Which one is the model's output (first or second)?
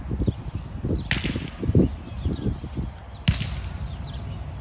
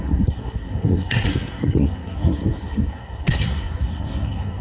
second